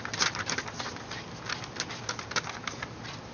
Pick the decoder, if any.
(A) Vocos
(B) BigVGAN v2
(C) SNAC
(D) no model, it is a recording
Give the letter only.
D